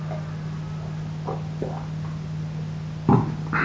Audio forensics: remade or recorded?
recorded